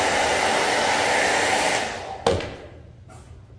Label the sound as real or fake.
real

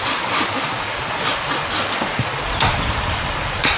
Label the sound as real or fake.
real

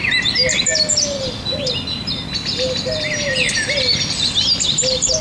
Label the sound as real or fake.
real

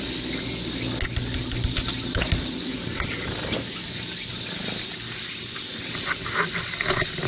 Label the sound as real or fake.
real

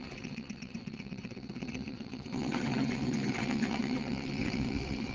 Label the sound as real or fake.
fake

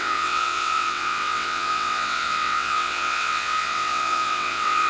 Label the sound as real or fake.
fake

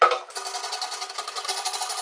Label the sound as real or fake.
real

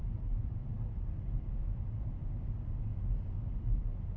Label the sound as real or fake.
real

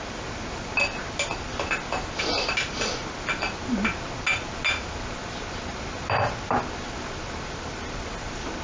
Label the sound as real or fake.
real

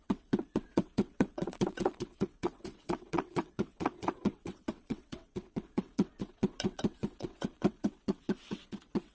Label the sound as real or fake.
fake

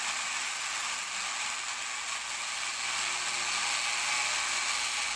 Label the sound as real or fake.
real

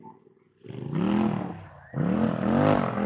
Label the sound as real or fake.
real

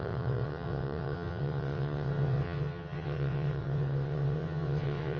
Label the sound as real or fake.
fake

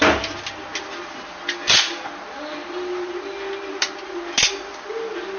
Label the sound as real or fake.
real